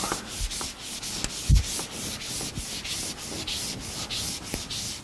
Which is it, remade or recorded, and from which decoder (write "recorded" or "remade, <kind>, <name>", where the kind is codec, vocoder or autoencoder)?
recorded